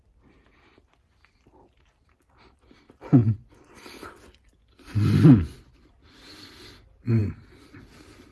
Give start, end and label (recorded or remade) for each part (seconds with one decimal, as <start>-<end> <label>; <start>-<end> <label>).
0.0-8.3 recorded